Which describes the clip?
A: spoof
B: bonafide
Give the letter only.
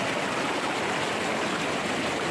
B